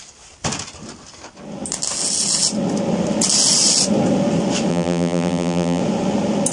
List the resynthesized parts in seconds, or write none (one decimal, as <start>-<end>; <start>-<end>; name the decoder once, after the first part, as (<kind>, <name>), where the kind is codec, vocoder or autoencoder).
4.7-5.8 (vocoder, BigVGAN v2)